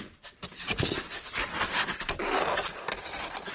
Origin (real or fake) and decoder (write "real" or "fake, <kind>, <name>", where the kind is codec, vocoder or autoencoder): real